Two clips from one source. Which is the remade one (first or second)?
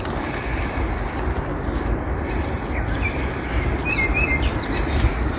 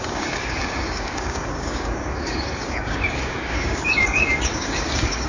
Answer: second